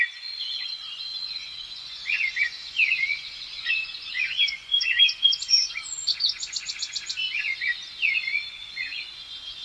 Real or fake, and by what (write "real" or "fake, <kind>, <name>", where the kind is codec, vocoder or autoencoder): fake, vocoder, Vocos